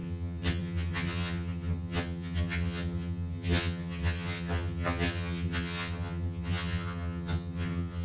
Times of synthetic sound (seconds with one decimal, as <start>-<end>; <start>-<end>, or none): 0.0-8.0